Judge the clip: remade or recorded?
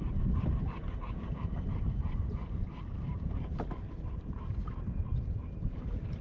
remade